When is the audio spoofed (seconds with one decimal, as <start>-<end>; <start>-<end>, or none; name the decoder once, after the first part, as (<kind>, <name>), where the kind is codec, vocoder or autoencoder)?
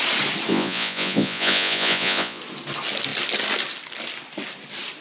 0.5-2.4 (vocoder, Vocos)